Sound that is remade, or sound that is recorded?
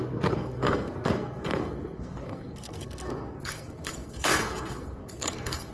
remade